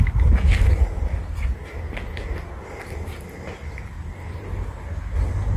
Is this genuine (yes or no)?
yes